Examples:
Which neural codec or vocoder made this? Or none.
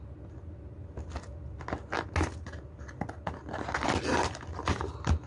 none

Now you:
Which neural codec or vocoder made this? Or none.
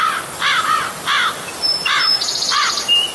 none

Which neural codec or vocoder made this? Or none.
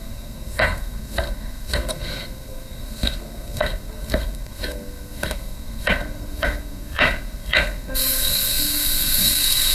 codec, SNAC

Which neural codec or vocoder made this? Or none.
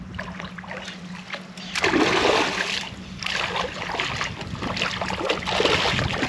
none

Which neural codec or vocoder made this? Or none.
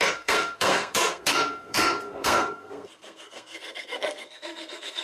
codec, SNAC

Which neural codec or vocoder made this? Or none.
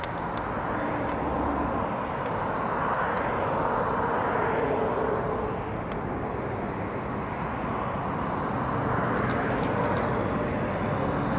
none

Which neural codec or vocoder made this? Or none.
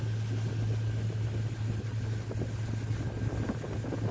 none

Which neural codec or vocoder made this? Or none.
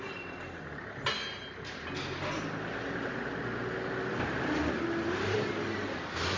none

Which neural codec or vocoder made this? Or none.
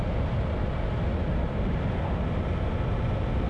none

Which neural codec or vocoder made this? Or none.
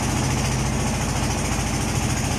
none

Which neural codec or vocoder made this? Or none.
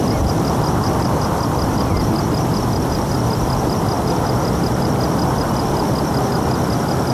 vocoder, BigVGAN v2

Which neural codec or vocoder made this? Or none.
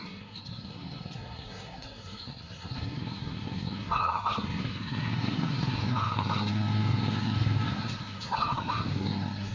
codec, SNAC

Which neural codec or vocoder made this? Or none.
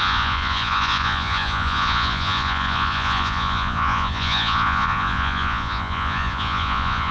vocoder, Vocos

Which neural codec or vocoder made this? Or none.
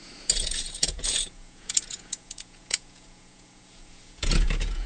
vocoder, Vocos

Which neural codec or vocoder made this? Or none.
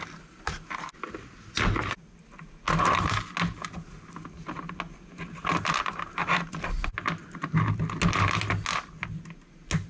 none